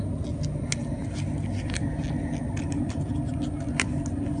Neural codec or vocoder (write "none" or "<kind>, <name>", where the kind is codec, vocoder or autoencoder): none